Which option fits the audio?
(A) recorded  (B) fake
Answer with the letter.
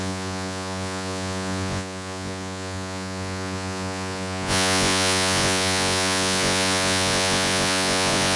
B